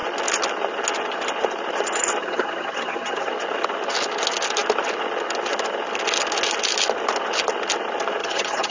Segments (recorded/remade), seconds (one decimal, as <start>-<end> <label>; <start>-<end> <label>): 0.0-2.2 recorded; 2.2-3.3 remade; 3.3-8.2 recorded; 8.2-8.7 remade